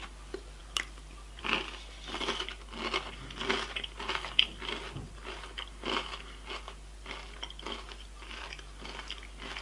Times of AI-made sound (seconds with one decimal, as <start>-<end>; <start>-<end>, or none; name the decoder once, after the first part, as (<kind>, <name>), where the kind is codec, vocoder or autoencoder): none

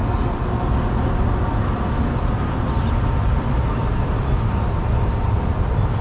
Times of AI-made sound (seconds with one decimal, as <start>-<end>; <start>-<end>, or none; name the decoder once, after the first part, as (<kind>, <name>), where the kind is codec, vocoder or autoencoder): 0.0-0.5 (codec, DAC)

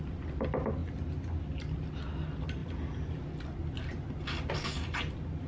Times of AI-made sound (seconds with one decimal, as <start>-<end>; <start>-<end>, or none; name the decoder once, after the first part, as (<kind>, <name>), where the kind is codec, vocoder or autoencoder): none

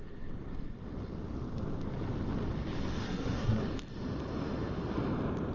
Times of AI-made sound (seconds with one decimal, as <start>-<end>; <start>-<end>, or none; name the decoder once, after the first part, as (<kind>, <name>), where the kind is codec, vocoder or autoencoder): 3.0-3.6 (codec, SNAC)

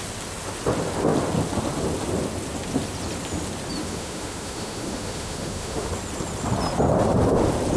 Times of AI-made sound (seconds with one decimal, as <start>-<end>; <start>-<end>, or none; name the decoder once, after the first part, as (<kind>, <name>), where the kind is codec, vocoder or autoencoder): 3.8-5.9 (autoencoder, DAC-VAE)

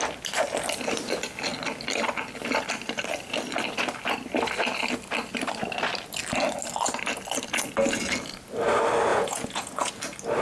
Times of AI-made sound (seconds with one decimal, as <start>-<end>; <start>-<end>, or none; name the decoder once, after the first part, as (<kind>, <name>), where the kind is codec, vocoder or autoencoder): 9.1-9.9 (vocoder, Vocos)